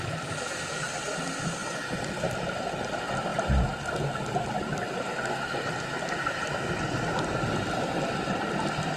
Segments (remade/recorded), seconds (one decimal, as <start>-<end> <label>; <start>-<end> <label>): 0.0-3.3 remade; 3.3-4.3 recorded; 4.3-9.0 remade